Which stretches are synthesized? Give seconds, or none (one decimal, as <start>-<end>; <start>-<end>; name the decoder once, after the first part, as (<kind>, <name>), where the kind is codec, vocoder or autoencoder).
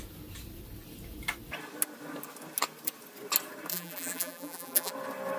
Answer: 3.7-4.9 (vocoder, BigVGAN v2)